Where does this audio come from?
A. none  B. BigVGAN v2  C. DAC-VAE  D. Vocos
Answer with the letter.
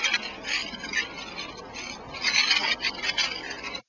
A